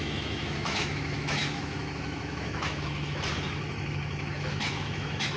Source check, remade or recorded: remade